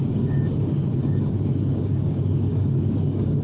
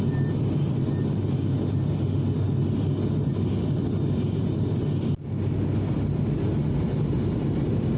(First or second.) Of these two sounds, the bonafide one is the second